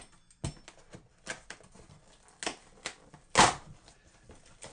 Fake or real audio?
real